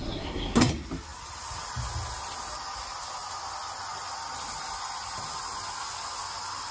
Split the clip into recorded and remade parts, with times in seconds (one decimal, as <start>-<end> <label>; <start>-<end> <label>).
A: 0.0-0.7 remade; 0.7-6.7 recorded